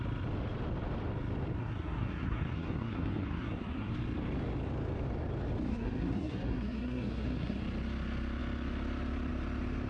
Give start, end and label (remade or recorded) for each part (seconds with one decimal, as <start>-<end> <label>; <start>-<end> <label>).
0.0-1.6 recorded; 1.6-3.9 remade; 3.9-5.7 recorded; 5.7-7.6 remade; 7.6-9.9 recorded